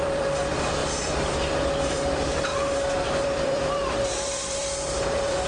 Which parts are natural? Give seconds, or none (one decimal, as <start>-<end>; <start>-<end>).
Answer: 0.8-1.8